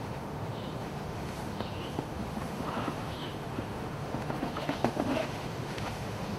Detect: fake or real fake